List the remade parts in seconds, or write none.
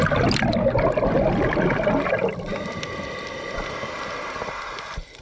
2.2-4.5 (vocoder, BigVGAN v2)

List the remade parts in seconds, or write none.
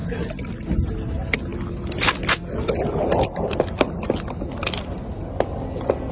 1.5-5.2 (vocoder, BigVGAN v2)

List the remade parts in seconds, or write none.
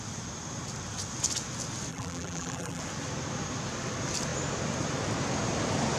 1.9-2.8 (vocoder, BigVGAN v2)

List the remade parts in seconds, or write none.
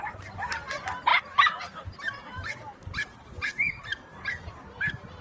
2.2-4.3 (vocoder, BigVGAN v2)